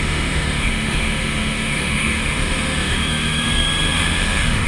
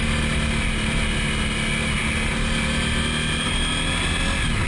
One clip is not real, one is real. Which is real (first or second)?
second